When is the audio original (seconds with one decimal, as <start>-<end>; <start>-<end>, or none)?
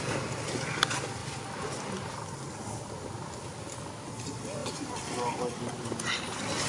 0.0-6.7